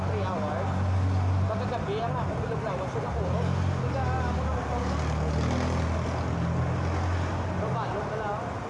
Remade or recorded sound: recorded